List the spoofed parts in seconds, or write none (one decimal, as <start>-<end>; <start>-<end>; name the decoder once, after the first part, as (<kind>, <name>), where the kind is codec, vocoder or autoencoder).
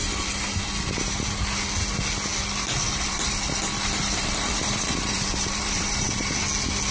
0.0-0.9 (vocoder, BigVGAN v2); 2.3-6.4